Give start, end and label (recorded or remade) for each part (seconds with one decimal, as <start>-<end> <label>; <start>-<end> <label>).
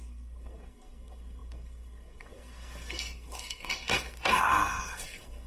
0.0-5.5 remade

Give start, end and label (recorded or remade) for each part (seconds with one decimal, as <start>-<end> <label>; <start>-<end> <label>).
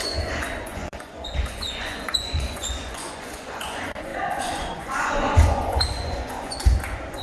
0.0-7.2 remade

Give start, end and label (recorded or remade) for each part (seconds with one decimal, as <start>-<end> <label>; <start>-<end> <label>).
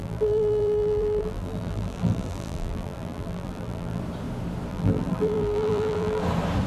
0.0-4.0 remade; 4.0-4.7 recorded; 4.7-6.2 remade; 6.2-6.7 recorded